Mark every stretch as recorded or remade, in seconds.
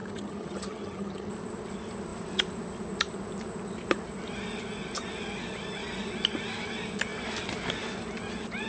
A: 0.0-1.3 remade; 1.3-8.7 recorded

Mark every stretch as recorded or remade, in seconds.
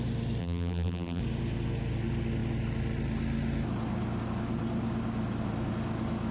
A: 0.0-0.4 recorded; 0.4-1.2 remade; 1.2-6.3 recorded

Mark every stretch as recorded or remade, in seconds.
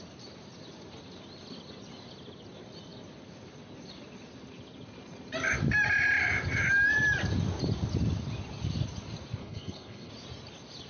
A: 0.0-9.4 recorded; 9.4-10.1 remade; 10.1-10.9 recorded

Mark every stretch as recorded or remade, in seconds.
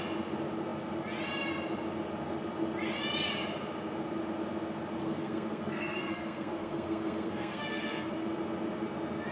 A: 0.0-5.0 recorded; 5.0-8.1 remade; 8.1-9.3 recorded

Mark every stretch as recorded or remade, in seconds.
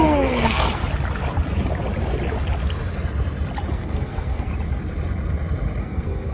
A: 0.0-0.8 remade; 0.8-3.7 recorded; 3.7-4.5 remade; 4.5-5.8 recorded; 5.8-6.3 remade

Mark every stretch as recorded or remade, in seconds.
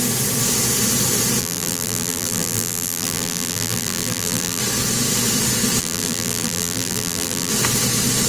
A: 0.0-1.4 recorded; 1.4-4.6 remade; 4.6-5.8 recorded; 5.8-7.5 remade; 7.5-8.3 recorded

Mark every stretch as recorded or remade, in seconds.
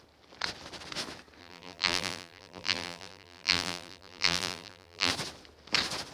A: 0.0-1.4 recorded; 1.4-5.1 remade; 5.1-6.1 recorded